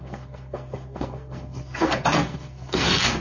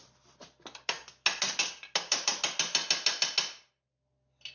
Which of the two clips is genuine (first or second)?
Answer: second